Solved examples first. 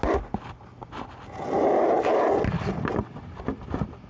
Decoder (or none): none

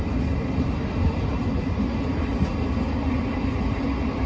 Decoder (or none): none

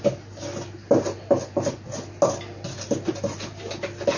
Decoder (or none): none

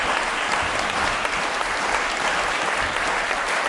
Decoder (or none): vocoder, BigVGAN v2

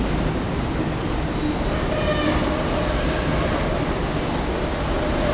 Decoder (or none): none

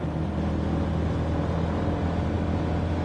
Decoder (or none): none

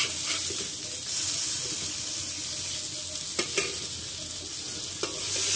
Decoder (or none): none